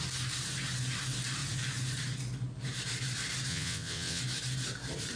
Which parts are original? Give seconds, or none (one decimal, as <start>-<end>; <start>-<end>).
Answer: 0.0-3.5; 4.2-5.2